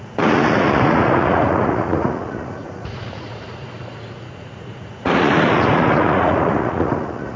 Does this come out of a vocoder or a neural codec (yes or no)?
yes